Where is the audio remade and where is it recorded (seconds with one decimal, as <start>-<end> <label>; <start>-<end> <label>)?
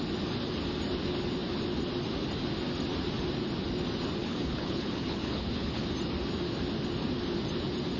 0.0-4.2 recorded; 4.2-5.8 remade; 5.8-8.0 recorded